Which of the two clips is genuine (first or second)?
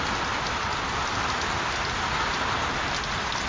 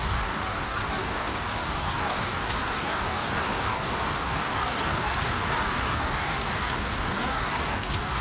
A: first